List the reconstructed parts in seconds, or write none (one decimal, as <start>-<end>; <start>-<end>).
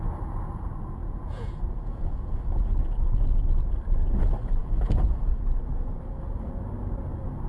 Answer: 1.0-2.4; 4.6-5.3